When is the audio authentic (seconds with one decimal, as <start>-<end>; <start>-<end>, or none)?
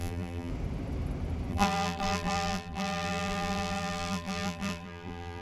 0.5-1.5